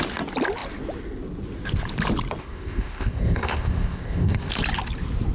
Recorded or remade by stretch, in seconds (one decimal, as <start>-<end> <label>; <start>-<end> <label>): 0.0-2.4 recorded; 2.4-4.5 remade; 4.5-5.3 recorded